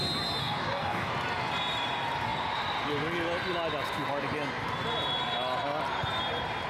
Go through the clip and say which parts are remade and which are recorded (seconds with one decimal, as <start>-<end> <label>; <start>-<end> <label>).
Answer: 0.0-0.4 recorded; 0.4-1.1 remade; 1.1-6.7 recorded